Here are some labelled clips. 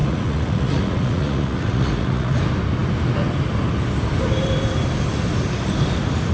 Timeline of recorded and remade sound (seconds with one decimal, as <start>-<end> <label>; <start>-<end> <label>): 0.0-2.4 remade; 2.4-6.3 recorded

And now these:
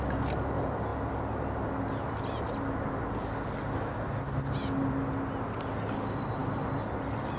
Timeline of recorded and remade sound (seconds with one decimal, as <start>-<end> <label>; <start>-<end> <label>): 0.0-7.4 recorded

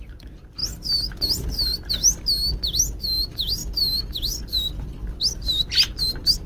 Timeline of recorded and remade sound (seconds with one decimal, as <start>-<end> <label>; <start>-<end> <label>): 0.0-6.5 recorded

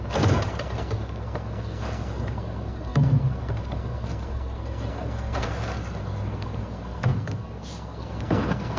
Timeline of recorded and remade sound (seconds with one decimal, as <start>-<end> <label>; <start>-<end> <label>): 0.0-8.8 remade